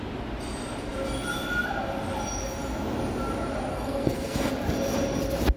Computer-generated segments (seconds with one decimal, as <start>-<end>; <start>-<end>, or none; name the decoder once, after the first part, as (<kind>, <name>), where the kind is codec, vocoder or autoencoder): 3.7-4.5 (codec, SNAC)